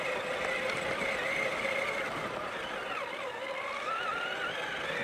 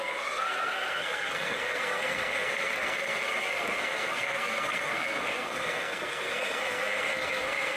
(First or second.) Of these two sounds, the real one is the first